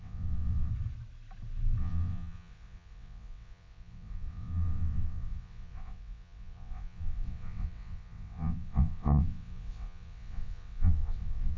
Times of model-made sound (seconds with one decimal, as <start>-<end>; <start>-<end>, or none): 0.0-0.7; 1.8-11.6